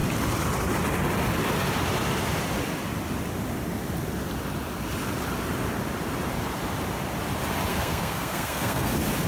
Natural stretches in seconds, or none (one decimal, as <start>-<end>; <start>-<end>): 0.0-7.7; 8.9-9.3